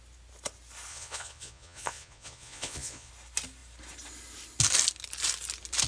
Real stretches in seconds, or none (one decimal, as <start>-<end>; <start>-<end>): 0.0-0.9; 3.1-5.9